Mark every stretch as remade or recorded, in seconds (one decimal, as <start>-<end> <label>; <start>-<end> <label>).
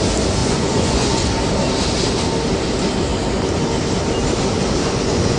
0.0-0.4 recorded; 0.4-1.3 remade; 1.3-4.8 recorded; 4.8-5.4 remade